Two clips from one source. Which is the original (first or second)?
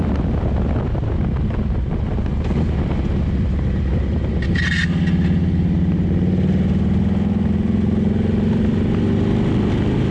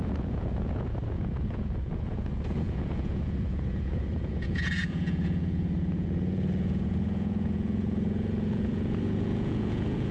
first